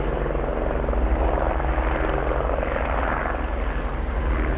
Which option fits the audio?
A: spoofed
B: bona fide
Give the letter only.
B